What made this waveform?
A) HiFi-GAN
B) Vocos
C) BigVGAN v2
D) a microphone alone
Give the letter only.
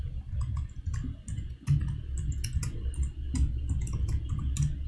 D